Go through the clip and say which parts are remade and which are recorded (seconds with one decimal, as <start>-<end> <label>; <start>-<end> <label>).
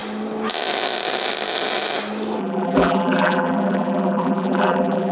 0.0-2.4 recorded; 2.4-5.1 remade